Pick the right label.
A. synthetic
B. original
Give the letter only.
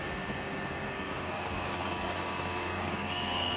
A